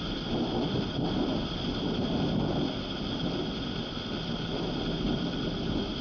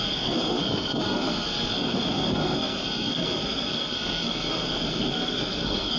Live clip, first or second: first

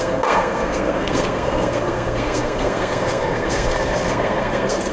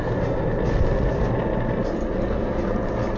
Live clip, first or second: second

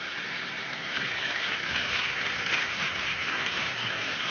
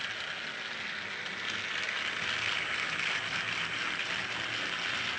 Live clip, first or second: second